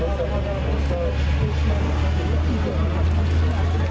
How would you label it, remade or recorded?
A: recorded